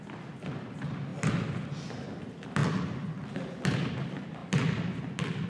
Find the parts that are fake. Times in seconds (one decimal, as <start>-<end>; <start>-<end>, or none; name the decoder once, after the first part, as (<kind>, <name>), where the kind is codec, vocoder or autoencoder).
none